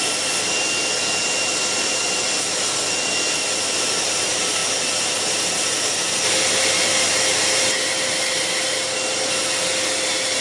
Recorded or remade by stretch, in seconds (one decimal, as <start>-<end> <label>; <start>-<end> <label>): 0.0-10.4 recorded

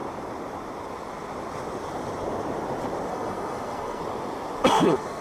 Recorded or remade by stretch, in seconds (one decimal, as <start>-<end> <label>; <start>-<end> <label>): 0.0-3.1 recorded; 3.1-4.0 remade; 4.0-4.7 recorded; 4.7-5.2 remade

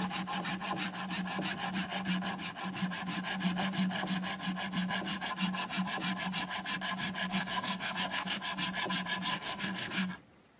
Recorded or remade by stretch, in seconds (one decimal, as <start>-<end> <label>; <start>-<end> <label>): 0.0-7.3 recorded; 7.3-8.4 remade; 8.4-9.3 recorded; 9.3-10.1 remade; 10.1-10.6 recorded

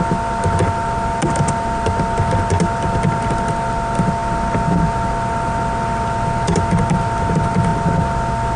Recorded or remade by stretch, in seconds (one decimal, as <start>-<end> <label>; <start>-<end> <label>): 0.0-8.6 recorded

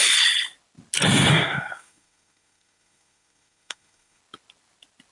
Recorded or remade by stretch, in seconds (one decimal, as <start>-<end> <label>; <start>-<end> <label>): 0.0-1.3 recorded; 1.3-4.2 remade; 4.2-5.1 recorded

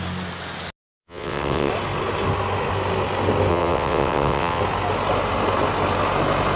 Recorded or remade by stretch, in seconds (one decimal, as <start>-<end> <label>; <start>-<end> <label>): 0.0-1.0 recorded; 1.0-1.7 remade; 1.7-3.5 recorded; 3.5-4.6 remade; 4.6-6.6 recorded